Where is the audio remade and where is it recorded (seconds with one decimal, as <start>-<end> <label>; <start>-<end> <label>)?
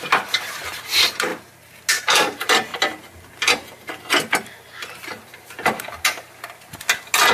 0.0-1.3 remade; 1.3-2.0 recorded; 2.0-2.7 remade; 2.7-7.3 recorded